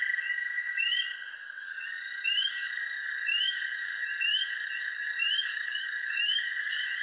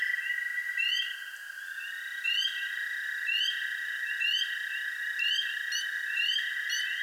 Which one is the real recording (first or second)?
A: second